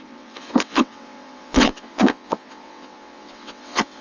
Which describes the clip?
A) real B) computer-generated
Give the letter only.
B